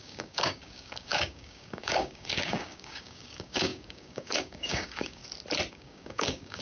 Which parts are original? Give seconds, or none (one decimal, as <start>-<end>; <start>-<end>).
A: 5.2-5.7